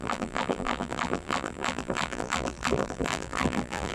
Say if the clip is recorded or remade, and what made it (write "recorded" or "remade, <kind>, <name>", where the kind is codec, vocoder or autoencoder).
remade, vocoder, BigVGAN v2